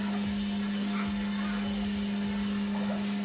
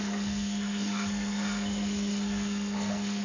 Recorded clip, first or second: first